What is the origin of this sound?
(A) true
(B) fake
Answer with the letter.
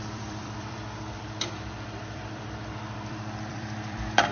B